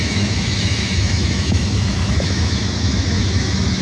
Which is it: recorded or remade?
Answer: remade